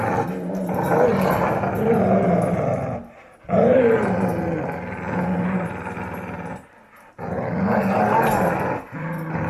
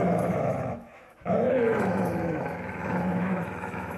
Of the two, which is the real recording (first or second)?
first